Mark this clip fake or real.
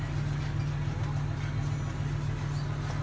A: real